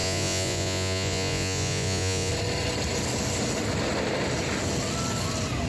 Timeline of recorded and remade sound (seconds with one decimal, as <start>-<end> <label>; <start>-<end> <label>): 0.0-2.3 remade; 2.3-5.7 recorded